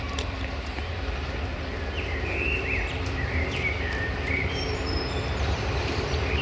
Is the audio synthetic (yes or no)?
yes